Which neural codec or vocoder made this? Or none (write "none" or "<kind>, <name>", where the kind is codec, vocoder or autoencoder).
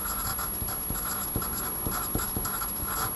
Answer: none